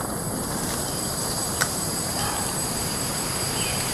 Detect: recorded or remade remade